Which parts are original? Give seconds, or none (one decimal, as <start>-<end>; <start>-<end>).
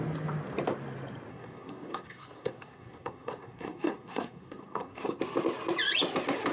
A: 0.0-1.3; 5.2-6.5